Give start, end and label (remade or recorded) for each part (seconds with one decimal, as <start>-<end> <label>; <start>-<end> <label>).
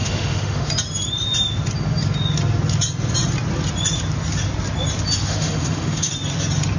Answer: 0.0-0.7 remade; 0.7-5.2 recorded; 5.2-6.1 remade; 6.1-6.8 recorded